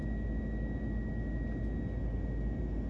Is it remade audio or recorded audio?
recorded